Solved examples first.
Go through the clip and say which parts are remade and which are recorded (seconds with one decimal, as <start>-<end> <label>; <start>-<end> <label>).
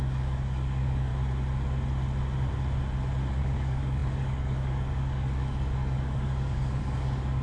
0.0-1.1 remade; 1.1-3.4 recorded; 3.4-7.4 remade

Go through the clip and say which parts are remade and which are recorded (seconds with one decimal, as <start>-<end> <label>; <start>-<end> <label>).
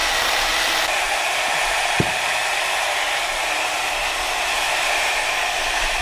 0.0-0.8 recorded; 0.8-2.4 remade; 2.4-6.0 recorded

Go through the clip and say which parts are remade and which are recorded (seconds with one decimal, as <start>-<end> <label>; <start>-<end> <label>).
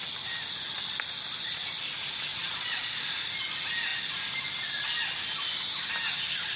0.0-2.3 recorded; 2.3-3.0 remade; 3.0-6.6 recorded